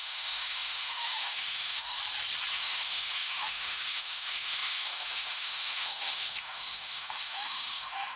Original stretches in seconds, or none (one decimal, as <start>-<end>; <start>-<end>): 2.0-2.5